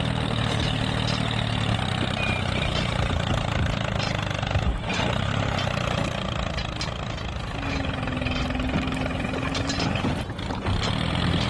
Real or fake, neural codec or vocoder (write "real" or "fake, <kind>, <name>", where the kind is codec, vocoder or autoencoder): real